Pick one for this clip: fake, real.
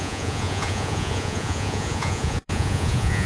fake